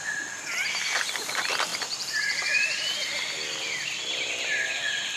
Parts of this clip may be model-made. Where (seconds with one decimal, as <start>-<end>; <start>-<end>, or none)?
0.0-5.2